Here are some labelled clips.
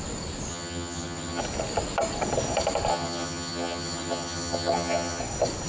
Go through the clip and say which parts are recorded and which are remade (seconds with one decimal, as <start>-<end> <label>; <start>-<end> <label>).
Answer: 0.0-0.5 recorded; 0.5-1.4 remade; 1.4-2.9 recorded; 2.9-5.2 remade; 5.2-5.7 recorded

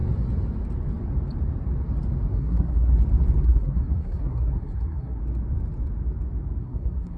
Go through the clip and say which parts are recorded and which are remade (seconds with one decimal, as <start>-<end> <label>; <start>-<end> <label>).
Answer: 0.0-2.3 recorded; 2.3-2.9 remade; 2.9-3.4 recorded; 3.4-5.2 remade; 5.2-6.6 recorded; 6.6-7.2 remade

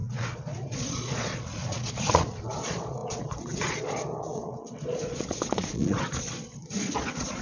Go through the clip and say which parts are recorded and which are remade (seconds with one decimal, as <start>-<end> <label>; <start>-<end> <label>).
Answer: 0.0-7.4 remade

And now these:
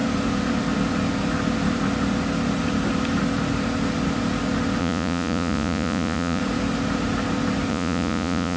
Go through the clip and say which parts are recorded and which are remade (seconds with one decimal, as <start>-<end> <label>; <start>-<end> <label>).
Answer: 0.0-4.8 recorded; 4.8-6.4 remade; 6.4-7.7 recorded; 7.7-8.6 remade

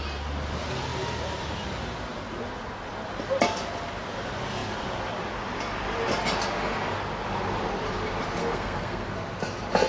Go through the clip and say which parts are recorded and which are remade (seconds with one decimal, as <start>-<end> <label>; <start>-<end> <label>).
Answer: 0.0-8.4 recorded; 8.4-9.1 remade; 9.1-9.9 recorded

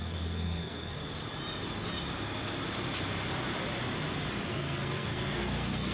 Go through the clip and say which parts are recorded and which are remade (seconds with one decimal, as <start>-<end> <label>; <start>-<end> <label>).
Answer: 0.0-1.0 remade; 1.0-4.5 recorded; 4.5-5.9 remade

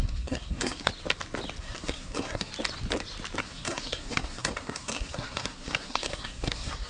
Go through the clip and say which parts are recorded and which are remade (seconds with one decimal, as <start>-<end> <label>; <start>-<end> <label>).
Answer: 0.0-0.9 remade; 0.9-1.6 recorded; 1.6-2.5 remade; 2.5-3.4 recorded; 3.4-6.9 remade

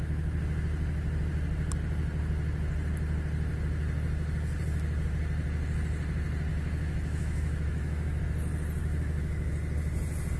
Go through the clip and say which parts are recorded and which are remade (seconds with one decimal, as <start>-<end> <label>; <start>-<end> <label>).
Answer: 0.0-6.5 recorded; 6.5-8.2 remade; 8.2-8.8 recorded; 8.8-9.5 remade; 9.5-10.4 recorded